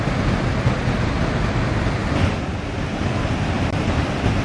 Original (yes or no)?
yes